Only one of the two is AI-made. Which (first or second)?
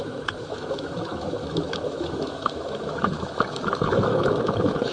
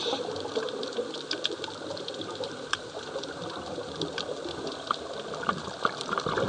first